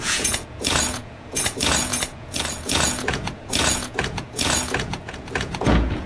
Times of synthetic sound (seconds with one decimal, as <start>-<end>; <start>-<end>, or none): 0.0-6.1